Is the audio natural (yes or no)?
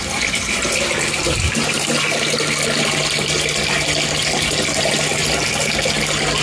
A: yes